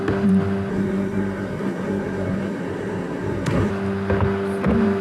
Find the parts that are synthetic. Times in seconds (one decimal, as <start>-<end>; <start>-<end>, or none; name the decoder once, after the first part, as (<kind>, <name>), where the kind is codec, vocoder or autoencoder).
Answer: 0.7-3.7 (codec, SNAC)